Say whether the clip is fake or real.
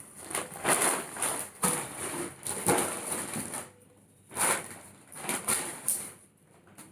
fake